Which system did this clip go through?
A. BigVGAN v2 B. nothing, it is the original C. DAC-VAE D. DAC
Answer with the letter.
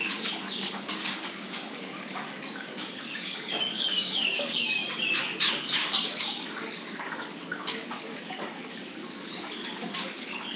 D